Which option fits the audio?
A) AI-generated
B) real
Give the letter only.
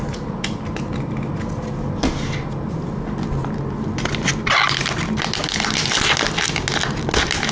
B